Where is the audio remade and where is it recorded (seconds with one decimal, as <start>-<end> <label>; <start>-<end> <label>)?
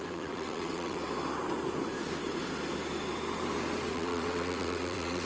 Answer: 0.0-1.0 remade; 1.0-3.9 recorded; 3.9-5.3 remade